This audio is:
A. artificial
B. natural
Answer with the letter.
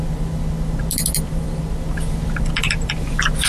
B